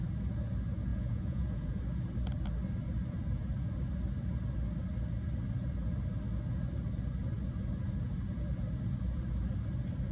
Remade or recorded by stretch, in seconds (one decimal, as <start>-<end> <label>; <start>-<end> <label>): 0.0-0.9 recorded; 0.9-1.8 remade; 1.8-10.1 recorded

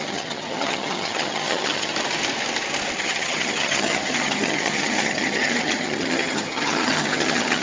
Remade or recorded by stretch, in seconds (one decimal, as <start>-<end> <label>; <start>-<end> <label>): 0.0-1.9 remade; 1.9-3.0 recorded; 3.0-7.6 remade

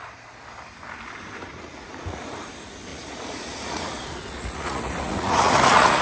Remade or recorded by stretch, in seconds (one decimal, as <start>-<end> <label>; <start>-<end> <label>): 0.0-1.5 recorded; 1.5-2.4 remade; 2.4-2.9 recorded; 2.9-6.0 remade

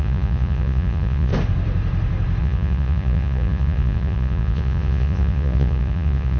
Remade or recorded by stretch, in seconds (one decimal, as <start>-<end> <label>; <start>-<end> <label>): 0.0-1.3 remade; 1.3-2.4 recorded; 2.4-6.4 remade

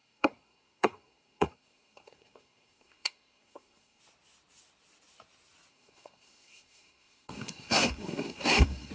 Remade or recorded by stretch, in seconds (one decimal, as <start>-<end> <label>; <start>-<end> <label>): 0.0-4.0 remade; 4.0-5.7 recorded; 5.7-8.9 remade

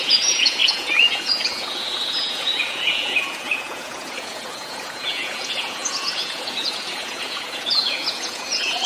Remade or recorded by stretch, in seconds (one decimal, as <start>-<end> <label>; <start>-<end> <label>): 0.0-8.9 remade

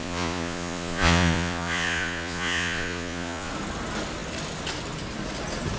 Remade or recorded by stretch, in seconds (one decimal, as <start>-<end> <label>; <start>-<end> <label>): 0.0-3.5 remade; 3.5-5.8 recorded

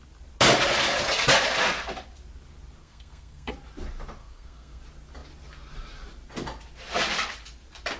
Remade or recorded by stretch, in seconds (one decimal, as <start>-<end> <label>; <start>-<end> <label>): 0.0-2.8 recorded; 2.8-3.5 remade; 3.5-4.2 recorded; 4.2-4.8 remade; 4.8-8.0 recorded